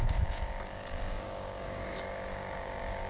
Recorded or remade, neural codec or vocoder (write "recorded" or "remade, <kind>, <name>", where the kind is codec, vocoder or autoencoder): remade, codec, DAC